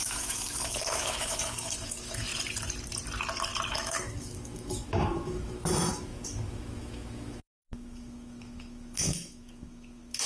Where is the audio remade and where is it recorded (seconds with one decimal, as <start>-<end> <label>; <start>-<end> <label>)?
0.0-2.3 remade; 2.3-3.7 recorded; 3.7-10.3 remade